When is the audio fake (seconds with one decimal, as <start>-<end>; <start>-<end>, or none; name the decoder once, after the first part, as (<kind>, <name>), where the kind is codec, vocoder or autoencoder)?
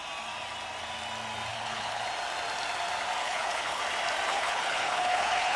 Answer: 1.5-2.0 (codec, HILCodec); 3.2-3.8; 4.3-5.6